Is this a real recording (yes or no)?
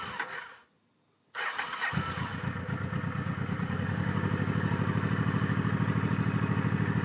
yes